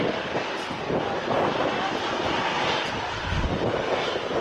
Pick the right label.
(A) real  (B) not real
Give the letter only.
A